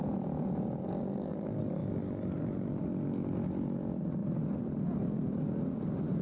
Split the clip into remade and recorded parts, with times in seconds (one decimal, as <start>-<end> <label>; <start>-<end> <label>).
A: 0.0-0.9 remade; 0.9-1.8 recorded; 1.8-2.8 remade; 2.8-4.2 recorded; 4.2-5.7 remade; 5.7-6.2 recorded